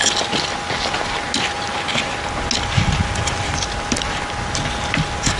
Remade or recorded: recorded